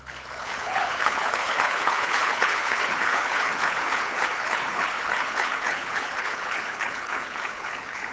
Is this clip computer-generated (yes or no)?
yes